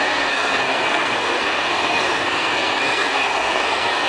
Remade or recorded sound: remade